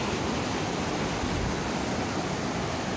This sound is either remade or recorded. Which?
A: recorded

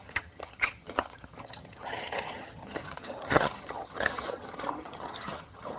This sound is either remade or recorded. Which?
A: remade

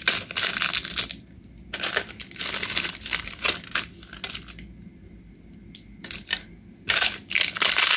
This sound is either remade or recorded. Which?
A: recorded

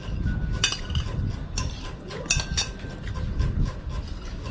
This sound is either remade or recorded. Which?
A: recorded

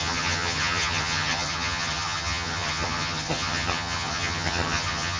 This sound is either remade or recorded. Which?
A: remade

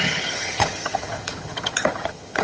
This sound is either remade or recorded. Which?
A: remade